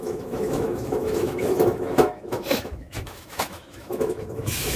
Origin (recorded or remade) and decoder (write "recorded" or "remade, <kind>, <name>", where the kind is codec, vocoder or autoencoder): remade, autoencoder, DAC-VAE